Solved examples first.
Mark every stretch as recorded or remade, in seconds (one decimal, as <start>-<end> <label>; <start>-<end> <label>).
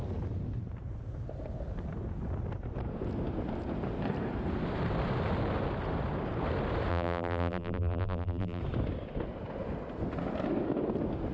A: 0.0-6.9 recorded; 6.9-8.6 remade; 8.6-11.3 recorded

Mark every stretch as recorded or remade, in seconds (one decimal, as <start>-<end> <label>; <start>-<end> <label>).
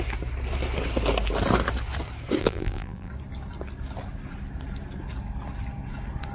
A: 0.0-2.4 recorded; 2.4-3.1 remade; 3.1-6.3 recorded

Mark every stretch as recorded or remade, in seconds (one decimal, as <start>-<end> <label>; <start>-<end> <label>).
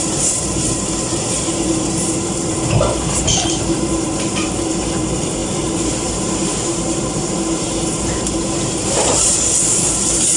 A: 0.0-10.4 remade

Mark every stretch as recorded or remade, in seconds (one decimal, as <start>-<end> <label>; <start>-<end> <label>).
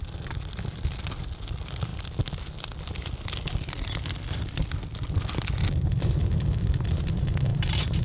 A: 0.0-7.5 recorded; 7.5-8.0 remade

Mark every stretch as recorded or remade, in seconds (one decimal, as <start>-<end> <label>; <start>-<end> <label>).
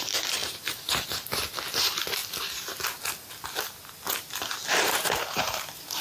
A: 0.0-0.4 remade; 0.4-1.7 recorded; 1.7-2.2 remade; 2.2-4.8 recorded; 4.8-6.0 remade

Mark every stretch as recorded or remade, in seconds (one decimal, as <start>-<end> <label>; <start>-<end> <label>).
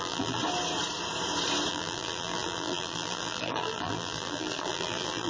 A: 0.0-0.4 remade; 0.4-1.7 recorded; 1.7-5.3 remade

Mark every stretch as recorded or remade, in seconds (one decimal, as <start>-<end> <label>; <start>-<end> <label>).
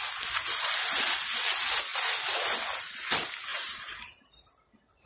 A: 0.0-3.5 recorded; 3.5-5.1 remade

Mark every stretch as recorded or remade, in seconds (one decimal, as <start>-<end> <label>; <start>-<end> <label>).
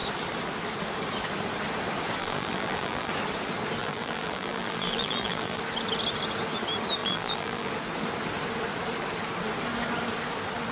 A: 0.0-2.2 recorded; 2.2-3.1 remade; 3.1-3.8 recorded; 3.8-5.6 remade; 5.6-7.0 recorded; 7.0-7.7 remade; 7.7-10.7 recorded